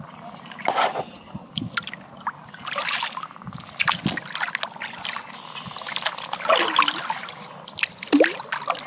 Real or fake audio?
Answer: real